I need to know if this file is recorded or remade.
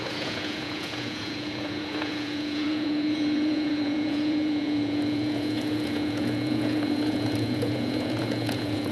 remade